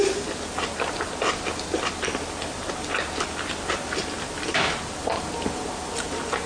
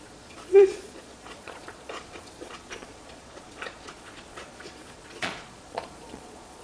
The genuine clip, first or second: first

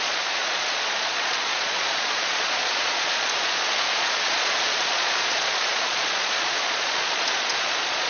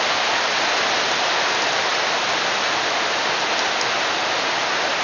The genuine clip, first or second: second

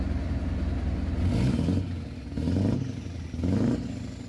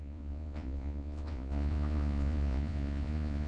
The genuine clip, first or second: first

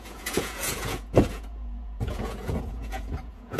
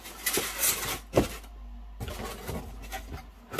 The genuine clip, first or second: second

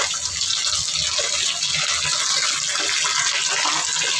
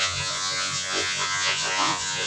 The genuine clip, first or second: first